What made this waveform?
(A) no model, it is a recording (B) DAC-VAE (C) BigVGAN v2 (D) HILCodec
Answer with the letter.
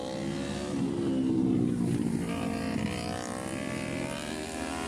A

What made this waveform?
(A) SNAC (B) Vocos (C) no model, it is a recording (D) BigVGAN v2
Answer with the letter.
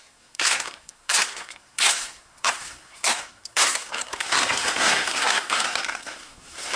A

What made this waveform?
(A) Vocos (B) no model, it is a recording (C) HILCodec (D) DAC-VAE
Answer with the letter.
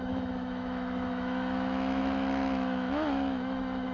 D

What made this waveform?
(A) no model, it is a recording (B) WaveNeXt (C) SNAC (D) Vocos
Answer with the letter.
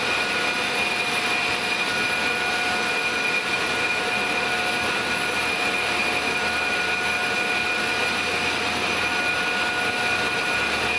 A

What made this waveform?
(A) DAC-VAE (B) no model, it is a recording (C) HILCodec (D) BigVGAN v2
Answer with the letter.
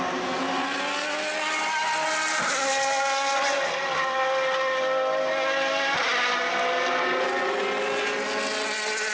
B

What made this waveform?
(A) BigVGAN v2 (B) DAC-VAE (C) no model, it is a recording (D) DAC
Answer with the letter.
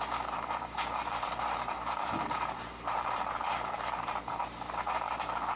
A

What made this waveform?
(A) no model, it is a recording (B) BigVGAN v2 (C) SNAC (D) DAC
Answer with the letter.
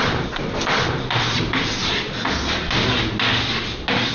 A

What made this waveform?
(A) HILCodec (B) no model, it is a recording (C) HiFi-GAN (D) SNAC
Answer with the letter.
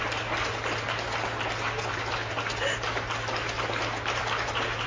B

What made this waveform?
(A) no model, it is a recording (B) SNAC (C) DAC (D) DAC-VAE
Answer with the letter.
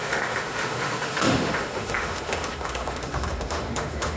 D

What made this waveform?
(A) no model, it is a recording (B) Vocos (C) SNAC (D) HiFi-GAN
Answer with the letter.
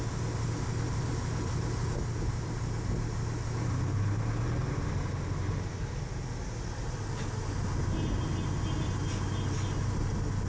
A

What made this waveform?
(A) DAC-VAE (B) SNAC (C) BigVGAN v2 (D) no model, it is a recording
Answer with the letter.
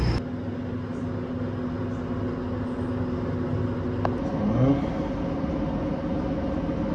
D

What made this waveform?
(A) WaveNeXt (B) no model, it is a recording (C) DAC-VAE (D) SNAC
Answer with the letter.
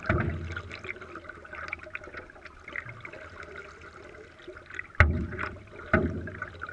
B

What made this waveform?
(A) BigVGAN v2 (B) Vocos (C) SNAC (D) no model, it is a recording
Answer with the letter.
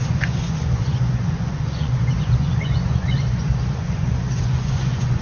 B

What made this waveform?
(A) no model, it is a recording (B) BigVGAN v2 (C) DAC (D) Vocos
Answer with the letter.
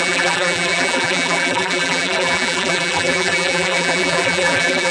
B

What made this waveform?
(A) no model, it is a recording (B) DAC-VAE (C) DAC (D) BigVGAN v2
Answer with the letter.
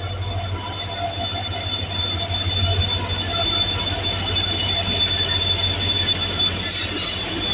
A